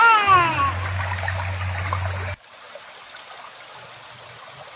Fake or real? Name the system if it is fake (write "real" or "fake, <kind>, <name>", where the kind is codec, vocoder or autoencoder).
real